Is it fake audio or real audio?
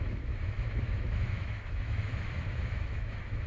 fake